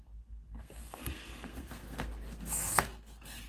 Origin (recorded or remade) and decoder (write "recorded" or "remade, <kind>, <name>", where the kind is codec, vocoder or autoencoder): remade, codec, SNAC